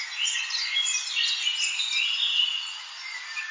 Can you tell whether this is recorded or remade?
recorded